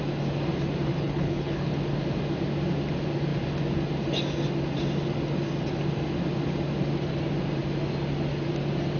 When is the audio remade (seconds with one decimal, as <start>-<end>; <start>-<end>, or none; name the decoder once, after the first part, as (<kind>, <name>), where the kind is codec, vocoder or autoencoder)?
0.9-1.7 (codec, HILCodec)